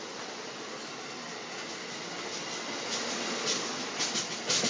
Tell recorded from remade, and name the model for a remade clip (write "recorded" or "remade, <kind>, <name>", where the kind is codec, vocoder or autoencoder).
recorded